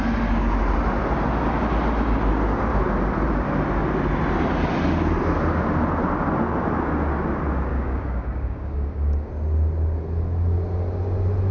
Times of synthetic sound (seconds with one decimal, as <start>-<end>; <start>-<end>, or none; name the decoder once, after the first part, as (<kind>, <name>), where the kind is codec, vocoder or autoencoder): 7.7-9.3 (codec, DAC)

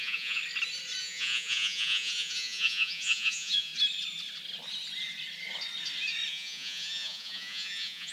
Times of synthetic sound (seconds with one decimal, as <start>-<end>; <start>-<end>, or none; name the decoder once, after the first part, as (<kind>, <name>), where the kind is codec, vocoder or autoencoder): 0.0-0.4 (vocoder, Vocos); 1.0-3.7; 6.3-8.1

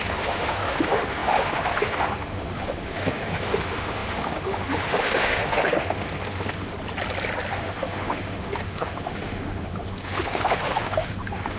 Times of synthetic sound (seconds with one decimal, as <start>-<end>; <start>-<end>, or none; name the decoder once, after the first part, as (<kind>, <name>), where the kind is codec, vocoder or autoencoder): 0.0-6.7 (autoencoder, DAC-VAE); 7.5-11.6